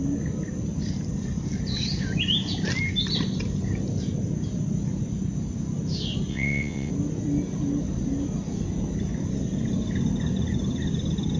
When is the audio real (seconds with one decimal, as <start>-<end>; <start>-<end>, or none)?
0.0-6.3; 6.9-11.4